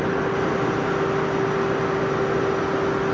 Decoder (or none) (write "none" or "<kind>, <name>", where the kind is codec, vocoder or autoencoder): none